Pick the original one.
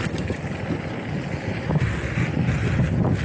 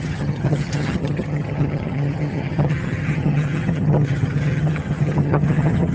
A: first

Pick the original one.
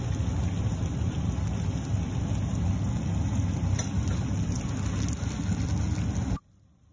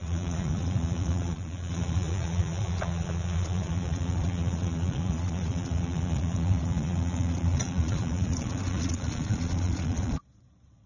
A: first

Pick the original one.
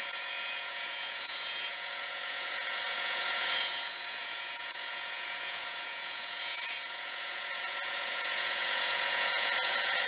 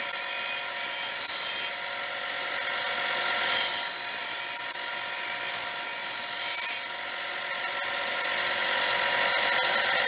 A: second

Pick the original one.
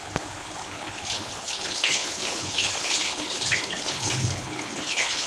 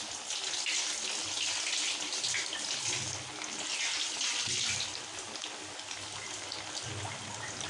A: second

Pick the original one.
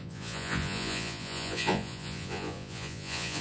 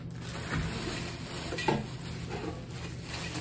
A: second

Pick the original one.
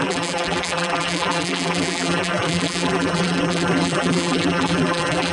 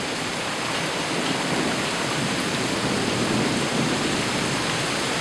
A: second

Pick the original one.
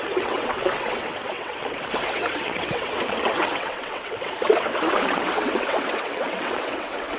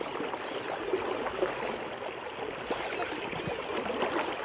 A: second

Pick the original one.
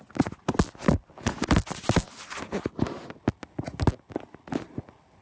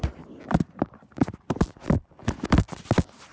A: first